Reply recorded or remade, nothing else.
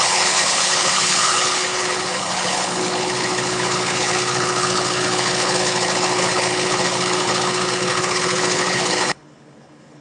remade